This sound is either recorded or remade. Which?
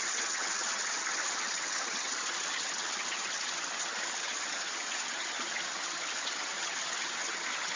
remade